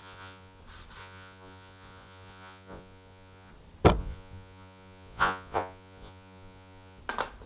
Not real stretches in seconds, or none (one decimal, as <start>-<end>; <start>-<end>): 0.0-0.6; 1.0-3.5; 4.0-7.0